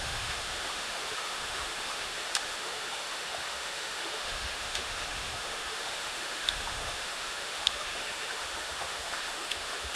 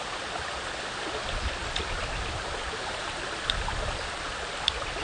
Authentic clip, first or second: second